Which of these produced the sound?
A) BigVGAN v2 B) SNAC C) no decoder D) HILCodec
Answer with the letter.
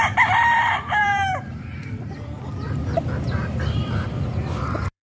A